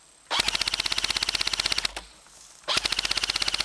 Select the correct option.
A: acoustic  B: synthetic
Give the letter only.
A